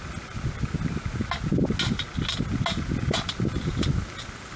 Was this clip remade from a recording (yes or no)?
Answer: no